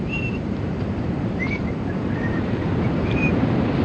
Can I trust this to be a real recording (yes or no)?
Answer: no